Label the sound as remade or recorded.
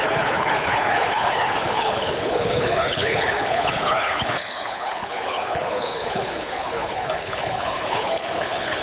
remade